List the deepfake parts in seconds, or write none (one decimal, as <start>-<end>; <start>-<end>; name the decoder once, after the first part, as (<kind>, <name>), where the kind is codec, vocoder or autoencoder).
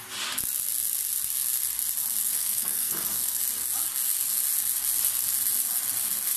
2.2-3.4 (codec, SNAC)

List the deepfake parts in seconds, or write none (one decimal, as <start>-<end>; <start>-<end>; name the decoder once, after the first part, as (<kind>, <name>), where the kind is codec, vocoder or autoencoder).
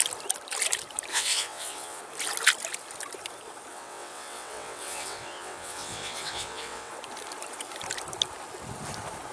1.1-2.0 (vocoder, WaveNeXt); 3.7-6.9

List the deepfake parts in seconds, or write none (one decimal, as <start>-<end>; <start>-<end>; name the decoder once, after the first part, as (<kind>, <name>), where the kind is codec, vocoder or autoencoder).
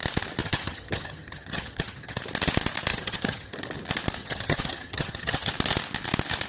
0.4-2.2 (vocoder, HiFi-GAN); 2.9-3.5; 4.2-5.5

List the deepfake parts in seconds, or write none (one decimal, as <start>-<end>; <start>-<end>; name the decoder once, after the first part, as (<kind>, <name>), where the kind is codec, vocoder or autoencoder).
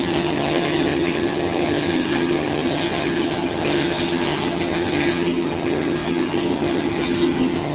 0.0-7.7 (vocoder, HiFi-GAN)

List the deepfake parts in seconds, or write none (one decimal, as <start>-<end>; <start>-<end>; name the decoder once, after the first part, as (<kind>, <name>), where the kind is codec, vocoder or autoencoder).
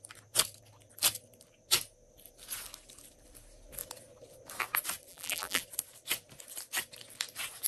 5.1-5.6 (vocoder, BigVGAN v2)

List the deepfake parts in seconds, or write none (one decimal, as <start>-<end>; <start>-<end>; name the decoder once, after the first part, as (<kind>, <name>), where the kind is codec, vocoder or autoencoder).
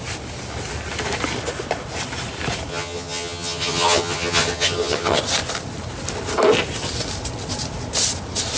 2.7-5.2 (vocoder, HiFi-GAN)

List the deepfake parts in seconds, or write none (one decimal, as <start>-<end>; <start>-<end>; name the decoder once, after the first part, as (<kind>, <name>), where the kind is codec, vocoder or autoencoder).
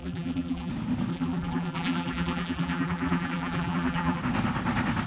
0.0-0.7 (vocoder, BigVGAN v2); 1.1-4.2